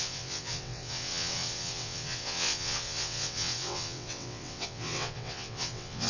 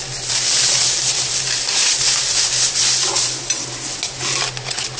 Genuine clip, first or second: second